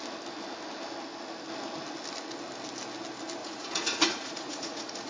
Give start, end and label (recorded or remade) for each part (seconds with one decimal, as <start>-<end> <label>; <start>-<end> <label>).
0.0-3.4 recorded; 3.4-5.1 remade